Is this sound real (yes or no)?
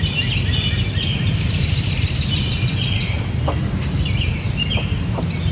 yes